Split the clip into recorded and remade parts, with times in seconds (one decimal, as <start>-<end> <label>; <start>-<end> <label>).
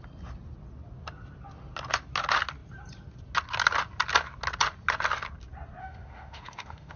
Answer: 0.0-5.8 recorded; 5.8-7.0 remade